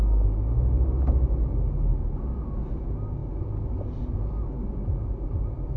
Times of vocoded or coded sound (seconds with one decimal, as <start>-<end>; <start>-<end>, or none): none